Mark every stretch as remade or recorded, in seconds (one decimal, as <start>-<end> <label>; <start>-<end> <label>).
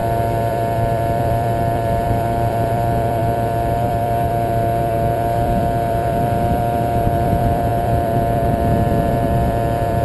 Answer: 0.0-0.5 recorded; 0.5-10.0 remade